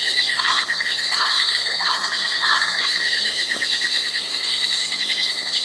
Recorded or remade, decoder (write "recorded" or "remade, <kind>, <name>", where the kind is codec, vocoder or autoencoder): remade, codec, SNAC